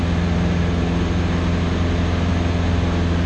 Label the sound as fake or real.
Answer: real